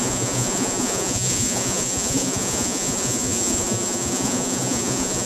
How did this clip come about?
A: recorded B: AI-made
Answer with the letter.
B